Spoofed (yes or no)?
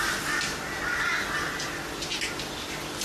no